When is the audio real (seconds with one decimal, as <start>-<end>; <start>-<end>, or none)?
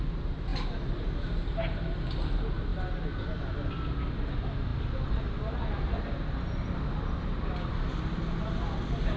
0.0-9.2